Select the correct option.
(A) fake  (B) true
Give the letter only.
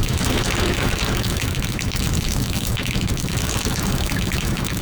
A